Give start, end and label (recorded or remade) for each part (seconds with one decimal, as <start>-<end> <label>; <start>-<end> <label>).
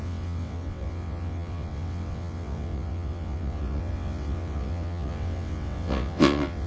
0.0-6.7 remade